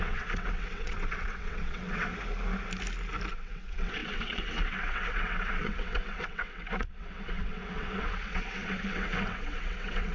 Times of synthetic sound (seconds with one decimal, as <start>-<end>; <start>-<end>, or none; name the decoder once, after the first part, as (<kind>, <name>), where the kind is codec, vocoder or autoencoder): 0.0-2.1 (vocoder, WaveNeXt); 3.3-10.1